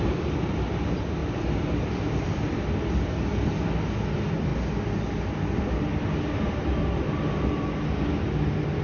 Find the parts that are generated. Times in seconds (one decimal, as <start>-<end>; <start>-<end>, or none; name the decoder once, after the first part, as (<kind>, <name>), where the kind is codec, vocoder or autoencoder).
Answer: none